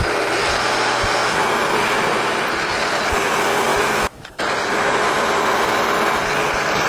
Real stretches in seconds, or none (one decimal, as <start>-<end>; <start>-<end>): 0.0-3.7; 4.4-6.9